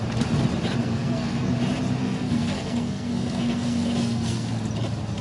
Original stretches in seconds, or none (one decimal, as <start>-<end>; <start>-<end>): 0.0-0.8; 1.5-2.0; 4.6-5.2

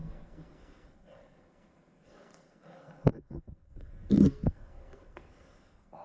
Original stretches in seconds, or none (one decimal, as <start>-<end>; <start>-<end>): none

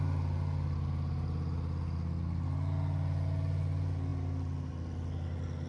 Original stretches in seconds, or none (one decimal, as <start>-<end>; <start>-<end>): 0.0-5.7